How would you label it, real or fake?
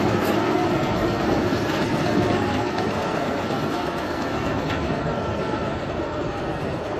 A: fake